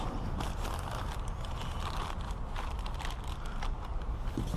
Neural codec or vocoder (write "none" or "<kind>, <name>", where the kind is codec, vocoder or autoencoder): none